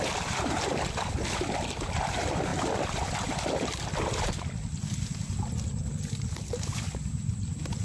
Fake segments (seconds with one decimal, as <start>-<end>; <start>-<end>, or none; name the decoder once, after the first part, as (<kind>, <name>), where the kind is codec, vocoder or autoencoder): none